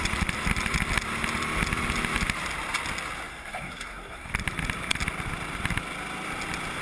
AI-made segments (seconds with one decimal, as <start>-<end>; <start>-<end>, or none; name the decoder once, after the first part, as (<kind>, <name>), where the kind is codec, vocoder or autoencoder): 3.3-4.3 (codec, SNAC)